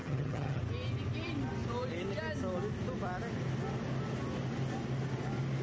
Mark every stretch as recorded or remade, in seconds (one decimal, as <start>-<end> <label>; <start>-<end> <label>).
0.0-0.6 remade; 0.6-5.6 recorded